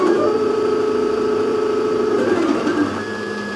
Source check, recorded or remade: remade